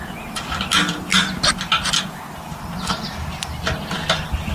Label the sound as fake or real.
real